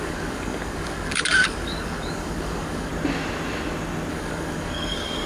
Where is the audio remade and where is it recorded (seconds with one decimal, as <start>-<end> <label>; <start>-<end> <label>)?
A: 0.0-2.9 remade; 2.9-4.1 recorded; 4.1-5.3 remade